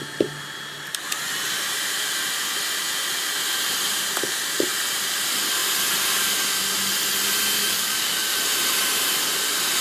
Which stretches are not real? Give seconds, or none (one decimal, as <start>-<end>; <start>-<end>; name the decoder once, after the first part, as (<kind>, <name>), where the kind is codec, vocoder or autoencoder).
7.6-8.4 (codec, DAC)